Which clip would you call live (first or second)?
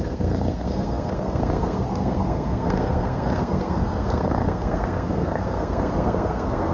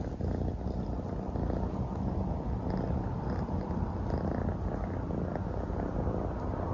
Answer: second